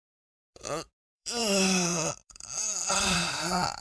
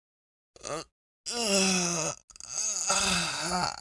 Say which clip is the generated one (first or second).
first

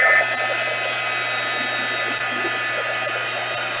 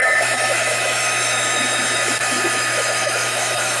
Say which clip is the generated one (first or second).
second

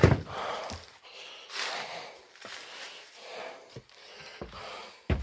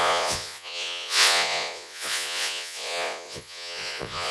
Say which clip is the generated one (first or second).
second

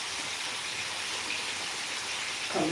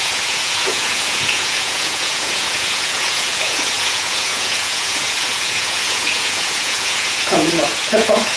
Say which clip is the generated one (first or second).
second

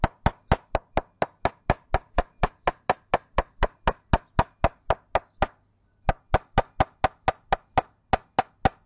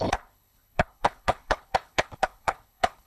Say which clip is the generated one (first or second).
second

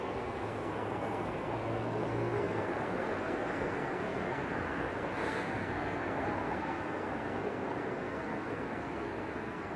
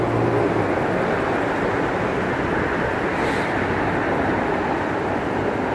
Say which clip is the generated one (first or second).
first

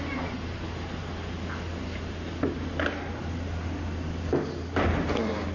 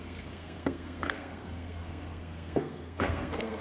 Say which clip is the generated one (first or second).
second